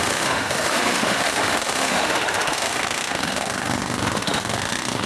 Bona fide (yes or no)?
no